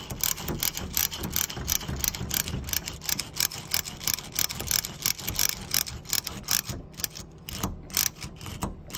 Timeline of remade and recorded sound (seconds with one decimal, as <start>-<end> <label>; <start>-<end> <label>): 0.0-9.0 recorded